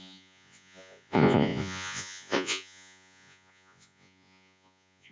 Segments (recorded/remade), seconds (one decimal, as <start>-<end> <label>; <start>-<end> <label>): 0.0-5.1 remade